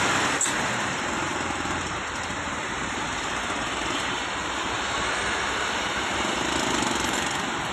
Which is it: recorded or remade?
remade